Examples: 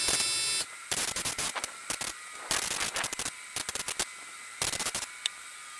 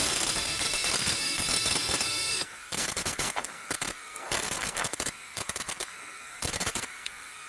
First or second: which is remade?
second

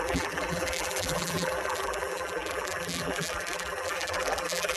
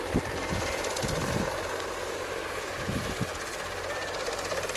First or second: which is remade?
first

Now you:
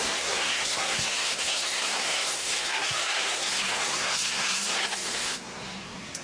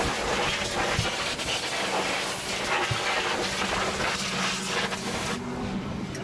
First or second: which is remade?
first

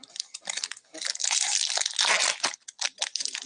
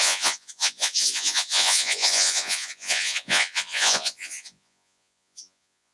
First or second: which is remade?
second